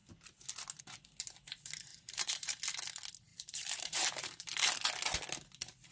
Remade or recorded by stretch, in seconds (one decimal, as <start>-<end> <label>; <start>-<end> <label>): 0.0-1.9 recorded; 1.9-2.6 remade; 2.6-3.3 recorded; 3.3-4.4 remade; 4.4-5.9 recorded